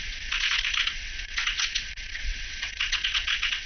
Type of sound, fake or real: fake